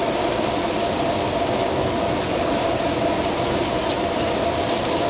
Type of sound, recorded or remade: recorded